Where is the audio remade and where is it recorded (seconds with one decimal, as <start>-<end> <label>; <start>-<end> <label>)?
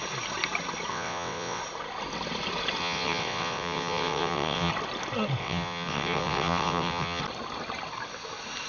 0.0-0.9 recorded; 0.9-1.6 remade; 1.6-2.8 recorded; 2.8-4.7 remade; 4.7-5.4 recorded; 5.4-7.2 remade; 7.2-8.7 recorded